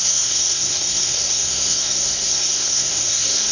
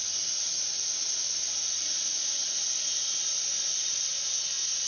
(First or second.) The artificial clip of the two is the first